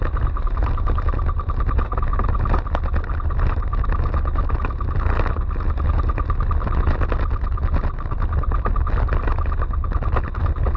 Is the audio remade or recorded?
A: recorded